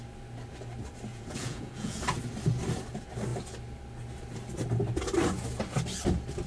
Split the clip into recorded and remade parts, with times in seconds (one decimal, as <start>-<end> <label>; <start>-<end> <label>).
0.0-1.1 recorded; 1.1-2.0 remade; 2.0-6.5 recorded